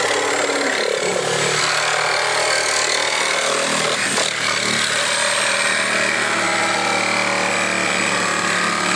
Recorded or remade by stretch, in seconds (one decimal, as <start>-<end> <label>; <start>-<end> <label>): 0.0-9.0 recorded